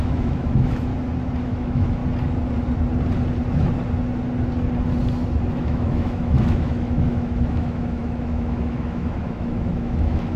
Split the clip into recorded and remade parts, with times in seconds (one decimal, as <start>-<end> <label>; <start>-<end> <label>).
0.0-0.9 remade; 0.9-1.4 recorded; 1.4-2.0 remade; 2.0-5.5 recorded; 5.5-10.4 remade